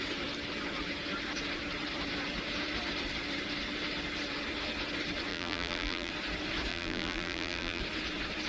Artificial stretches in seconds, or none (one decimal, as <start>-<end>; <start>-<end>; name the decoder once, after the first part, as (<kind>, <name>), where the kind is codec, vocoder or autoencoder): 5.3-6.1 (vocoder, BigVGAN v2); 6.7-7.8